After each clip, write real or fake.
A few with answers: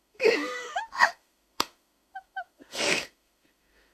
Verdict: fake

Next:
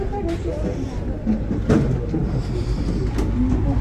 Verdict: real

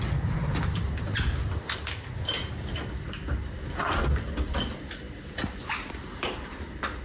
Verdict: real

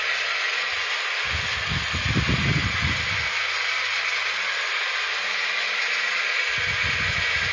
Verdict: real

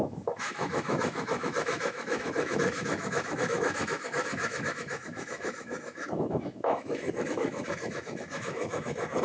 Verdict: fake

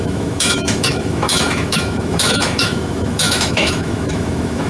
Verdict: fake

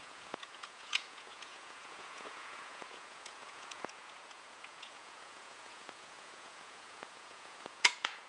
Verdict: fake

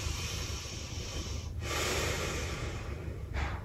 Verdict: fake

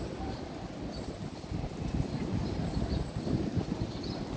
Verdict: real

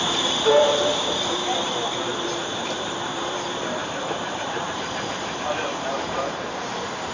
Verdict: fake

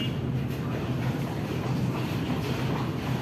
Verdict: real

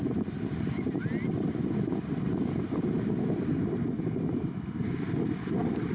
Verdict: real